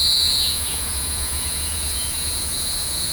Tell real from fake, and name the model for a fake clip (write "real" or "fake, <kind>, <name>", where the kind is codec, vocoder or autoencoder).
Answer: fake, vocoder, Vocos